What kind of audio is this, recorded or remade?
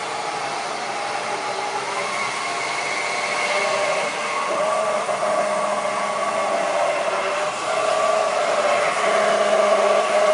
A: recorded